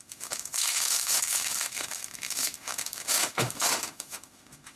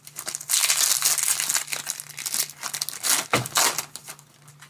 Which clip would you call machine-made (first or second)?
first